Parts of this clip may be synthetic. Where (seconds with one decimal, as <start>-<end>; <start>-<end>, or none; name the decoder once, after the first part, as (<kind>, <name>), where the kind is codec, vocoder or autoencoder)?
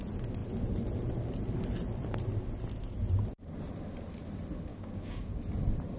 4.7-5.4 (codec, DAC)